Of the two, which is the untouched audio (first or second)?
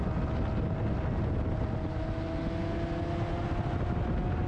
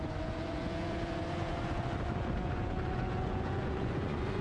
first